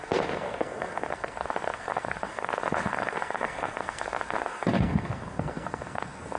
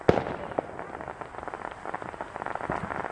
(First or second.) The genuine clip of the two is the second